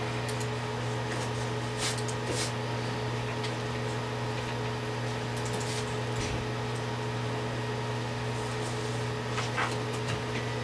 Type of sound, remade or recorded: recorded